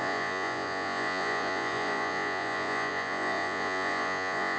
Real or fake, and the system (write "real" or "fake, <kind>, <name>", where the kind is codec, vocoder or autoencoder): fake, vocoder, Vocos